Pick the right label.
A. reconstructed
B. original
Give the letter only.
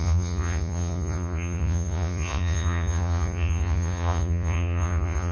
A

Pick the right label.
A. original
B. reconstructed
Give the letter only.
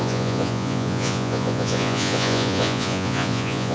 B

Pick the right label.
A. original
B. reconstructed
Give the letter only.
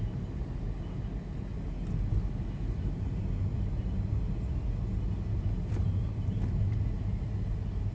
A